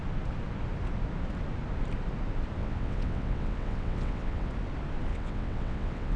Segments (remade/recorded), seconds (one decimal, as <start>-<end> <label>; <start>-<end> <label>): 0.0-2.6 recorded; 2.6-4.5 remade; 4.5-5.1 recorded; 5.1-6.2 remade

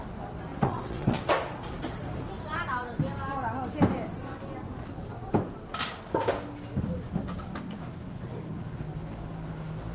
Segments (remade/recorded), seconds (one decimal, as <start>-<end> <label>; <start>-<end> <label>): 0.0-0.5 recorded; 0.5-1.3 remade; 1.3-9.9 recorded